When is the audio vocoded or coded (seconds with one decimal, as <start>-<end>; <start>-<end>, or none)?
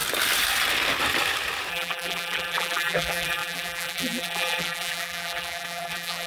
1.7-6.3